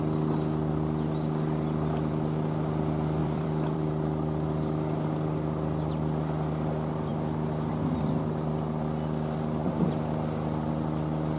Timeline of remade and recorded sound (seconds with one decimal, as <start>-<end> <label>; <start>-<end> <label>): 0.0-3.2 recorded; 3.2-3.9 remade; 3.9-11.4 recorded